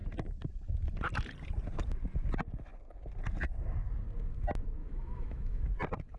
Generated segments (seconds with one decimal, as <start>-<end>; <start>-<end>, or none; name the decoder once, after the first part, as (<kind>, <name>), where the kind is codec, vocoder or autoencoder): 4.8-5.6 (autoencoder, DAC-VAE)